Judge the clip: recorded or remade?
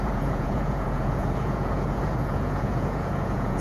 remade